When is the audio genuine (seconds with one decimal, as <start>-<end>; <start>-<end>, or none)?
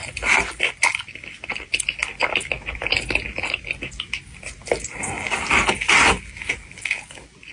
0.0-7.5